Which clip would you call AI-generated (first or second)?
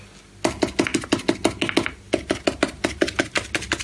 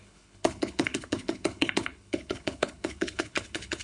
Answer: second